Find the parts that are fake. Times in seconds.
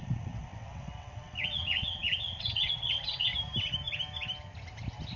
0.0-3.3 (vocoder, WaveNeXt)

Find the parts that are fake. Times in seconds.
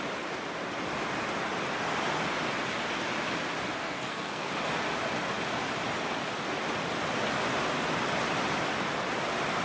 3.8-4.5 (codec, SNAC)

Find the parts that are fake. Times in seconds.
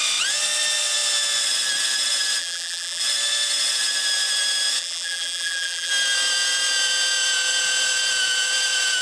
2.4-3.0 (vocoder, BigVGAN v2); 4.8-5.9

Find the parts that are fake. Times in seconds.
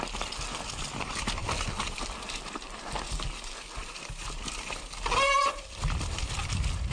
none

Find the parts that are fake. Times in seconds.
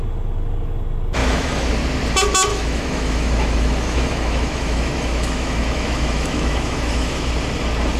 1.2-1.7 (autoencoder, DAC-VAE); 2.5-7.3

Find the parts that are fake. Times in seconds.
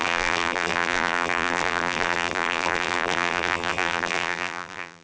0.0-5.0 (vocoder, BigVGAN v2)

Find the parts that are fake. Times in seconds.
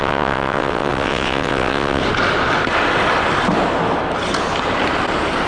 0.0-2.0 (vocoder, WaveNeXt)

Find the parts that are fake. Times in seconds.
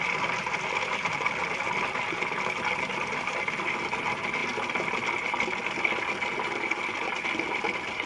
none